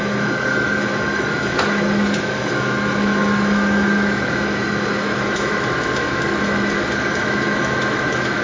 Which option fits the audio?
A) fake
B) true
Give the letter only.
A